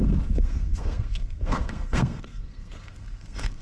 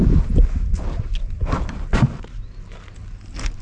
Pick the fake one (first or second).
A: first